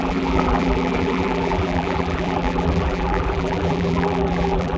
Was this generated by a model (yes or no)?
yes